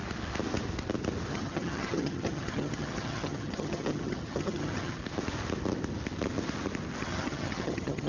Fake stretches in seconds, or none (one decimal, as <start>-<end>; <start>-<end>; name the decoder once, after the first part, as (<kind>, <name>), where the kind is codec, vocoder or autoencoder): 1.3-5.0 (vocoder, HiFi-GAN); 7.0-8.1